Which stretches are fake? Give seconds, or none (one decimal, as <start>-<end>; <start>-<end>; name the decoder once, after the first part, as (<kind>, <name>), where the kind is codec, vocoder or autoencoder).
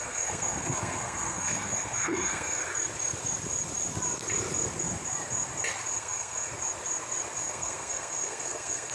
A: 0.0-2.6 (codec, SNAC); 6.0-6.5; 7.4-8.9